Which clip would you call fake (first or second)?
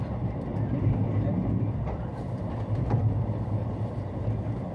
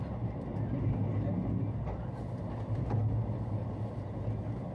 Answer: first